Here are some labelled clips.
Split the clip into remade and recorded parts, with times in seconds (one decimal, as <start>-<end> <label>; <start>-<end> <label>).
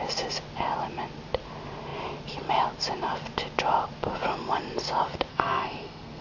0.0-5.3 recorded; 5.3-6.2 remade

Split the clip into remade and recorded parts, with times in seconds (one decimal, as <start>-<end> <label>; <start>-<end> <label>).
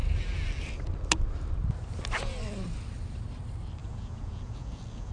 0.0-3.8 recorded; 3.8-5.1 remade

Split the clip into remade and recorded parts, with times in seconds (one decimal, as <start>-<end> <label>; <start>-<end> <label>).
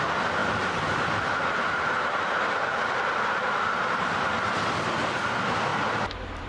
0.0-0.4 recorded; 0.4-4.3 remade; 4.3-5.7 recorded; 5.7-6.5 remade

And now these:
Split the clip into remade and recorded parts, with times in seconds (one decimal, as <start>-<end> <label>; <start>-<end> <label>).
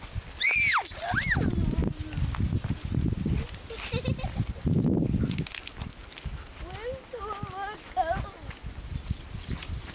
0.0-9.9 recorded